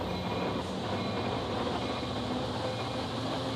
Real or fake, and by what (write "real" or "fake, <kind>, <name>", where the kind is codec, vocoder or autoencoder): real